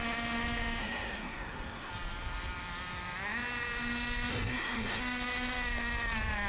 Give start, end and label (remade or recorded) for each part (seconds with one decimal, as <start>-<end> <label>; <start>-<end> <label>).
0.0-0.8 recorded; 0.8-1.9 remade; 1.9-4.3 recorded; 4.3-5.0 remade; 5.0-6.5 recorded